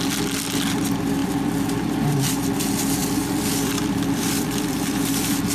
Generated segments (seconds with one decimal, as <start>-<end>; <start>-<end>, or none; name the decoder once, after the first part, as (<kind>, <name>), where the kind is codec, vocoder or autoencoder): 1.2-2.3 (vocoder, BigVGAN v2); 3.0-5.5